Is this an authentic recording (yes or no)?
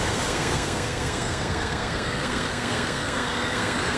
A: no